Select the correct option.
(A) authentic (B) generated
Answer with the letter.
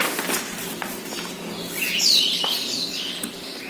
A